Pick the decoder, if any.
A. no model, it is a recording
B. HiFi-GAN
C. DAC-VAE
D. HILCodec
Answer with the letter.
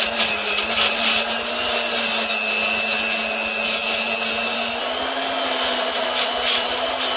A